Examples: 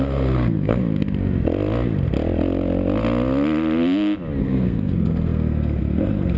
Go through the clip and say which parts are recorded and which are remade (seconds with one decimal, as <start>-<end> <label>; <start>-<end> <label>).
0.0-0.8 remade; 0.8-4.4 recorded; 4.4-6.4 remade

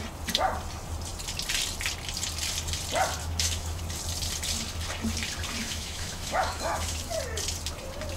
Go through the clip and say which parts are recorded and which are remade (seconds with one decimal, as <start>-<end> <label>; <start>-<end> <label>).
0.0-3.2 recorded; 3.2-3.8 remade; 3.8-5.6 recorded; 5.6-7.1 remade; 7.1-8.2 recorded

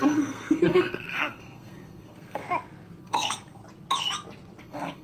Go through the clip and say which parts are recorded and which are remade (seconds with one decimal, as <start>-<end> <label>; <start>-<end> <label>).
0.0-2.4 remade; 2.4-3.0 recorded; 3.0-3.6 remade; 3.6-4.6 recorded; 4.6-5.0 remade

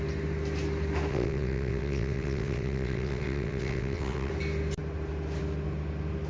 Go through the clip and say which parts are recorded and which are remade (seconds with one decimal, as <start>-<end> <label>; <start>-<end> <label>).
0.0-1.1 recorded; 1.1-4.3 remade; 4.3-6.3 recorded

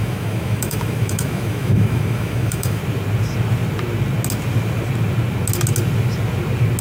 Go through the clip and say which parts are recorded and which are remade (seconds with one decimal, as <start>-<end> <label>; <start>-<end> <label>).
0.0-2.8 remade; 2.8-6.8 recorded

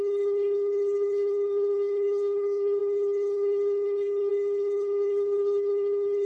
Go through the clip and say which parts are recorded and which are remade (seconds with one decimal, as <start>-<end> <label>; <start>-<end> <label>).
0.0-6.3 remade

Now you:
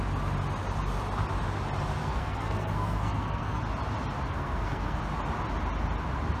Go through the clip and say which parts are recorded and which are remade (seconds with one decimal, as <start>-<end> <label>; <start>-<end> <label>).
0.0-2.0 recorded; 2.0-3.6 remade; 3.6-4.3 recorded; 4.3-5.0 remade; 5.0-6.4 recorded

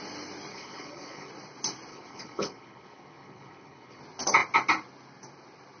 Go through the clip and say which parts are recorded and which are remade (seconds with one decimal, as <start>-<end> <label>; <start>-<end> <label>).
0.0-0.5 recorded; 0.5-1.3 remade; 1.3-1.9 recorded; 1.9-4.0 remade; 4.0-5.8 recorded